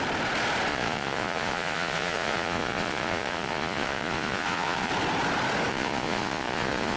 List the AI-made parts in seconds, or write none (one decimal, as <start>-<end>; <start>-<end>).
0.7-4.9; 5.7-7.0